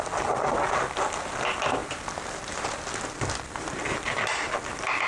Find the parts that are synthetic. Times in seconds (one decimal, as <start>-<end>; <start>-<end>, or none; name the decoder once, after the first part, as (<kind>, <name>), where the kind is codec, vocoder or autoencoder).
none